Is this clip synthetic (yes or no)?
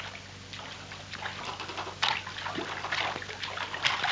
no